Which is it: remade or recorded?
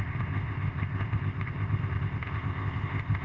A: remade